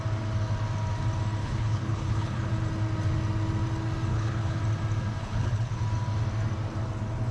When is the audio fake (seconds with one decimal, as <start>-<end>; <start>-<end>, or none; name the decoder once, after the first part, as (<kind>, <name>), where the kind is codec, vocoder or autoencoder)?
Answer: 1.4-2.5 (codec, HILCodec); 4.1-4.6; 5.2-5.8